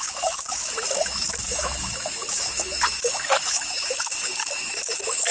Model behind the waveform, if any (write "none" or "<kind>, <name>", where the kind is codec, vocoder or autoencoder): autoencoder, DAC-VAE